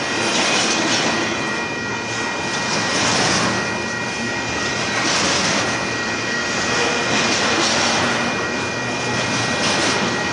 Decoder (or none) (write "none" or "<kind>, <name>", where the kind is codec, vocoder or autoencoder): none